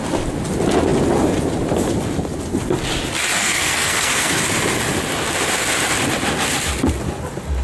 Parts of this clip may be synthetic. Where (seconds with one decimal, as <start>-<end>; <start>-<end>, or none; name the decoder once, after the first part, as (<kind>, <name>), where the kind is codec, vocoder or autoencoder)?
3.4-4.4 (codec, SNAC)